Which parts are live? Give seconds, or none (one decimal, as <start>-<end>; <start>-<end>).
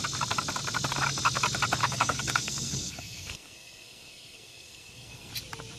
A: 0.0-1.8; 5.3-5.8